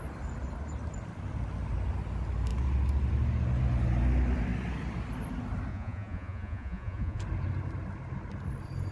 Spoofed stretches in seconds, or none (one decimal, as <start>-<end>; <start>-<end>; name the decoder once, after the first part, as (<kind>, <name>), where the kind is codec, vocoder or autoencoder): 5.7-7.2 (vocoder, Vocos)

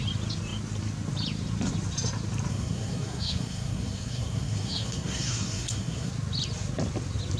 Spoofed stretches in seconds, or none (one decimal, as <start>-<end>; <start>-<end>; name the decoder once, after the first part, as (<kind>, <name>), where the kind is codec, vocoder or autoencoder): 2.5-6.1 (codec, SNAC)

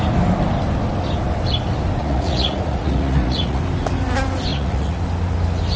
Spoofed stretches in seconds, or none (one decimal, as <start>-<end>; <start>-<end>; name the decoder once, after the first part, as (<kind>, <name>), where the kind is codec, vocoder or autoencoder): 2.0-3.6 (vocoder, Vocos); 4.5-5.0